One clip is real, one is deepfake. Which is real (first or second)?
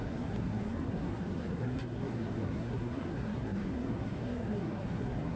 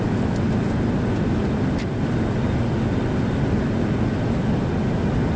second